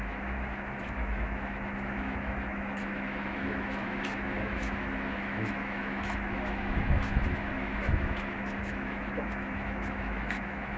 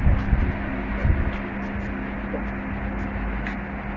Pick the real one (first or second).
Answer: second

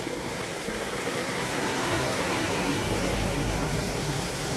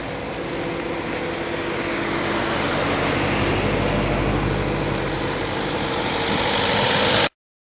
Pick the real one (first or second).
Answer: second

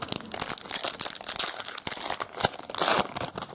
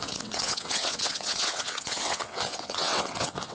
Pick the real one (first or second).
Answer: first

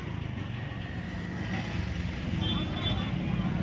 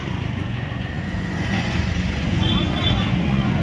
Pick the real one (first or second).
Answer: first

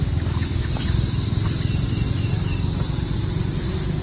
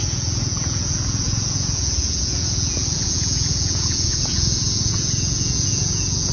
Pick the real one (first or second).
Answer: first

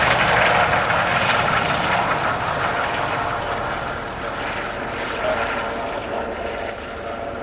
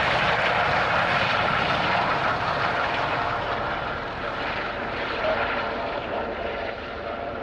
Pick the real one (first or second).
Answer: first